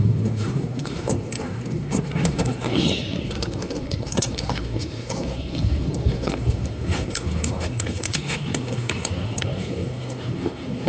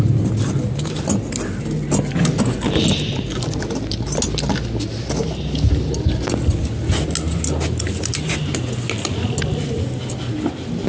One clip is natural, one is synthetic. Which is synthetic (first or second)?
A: first